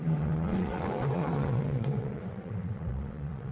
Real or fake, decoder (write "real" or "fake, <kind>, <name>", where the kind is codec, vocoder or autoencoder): fake, vocoder, WaveNeXt